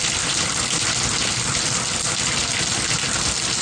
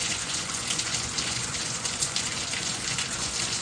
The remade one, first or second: second